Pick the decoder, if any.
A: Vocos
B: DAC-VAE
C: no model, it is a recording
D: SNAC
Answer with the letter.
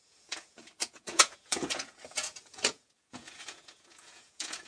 A